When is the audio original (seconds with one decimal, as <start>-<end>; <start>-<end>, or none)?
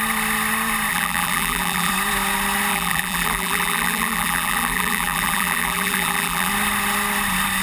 0.0-0.9; 1.9-2.7; 6.5-7.6